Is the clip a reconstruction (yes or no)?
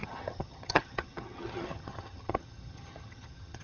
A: yes